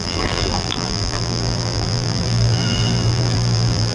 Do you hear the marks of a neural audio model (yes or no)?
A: yes